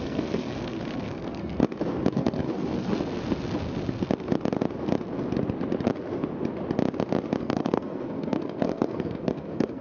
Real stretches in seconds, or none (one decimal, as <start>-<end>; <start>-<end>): 1.6-2.1; 2.9-7.4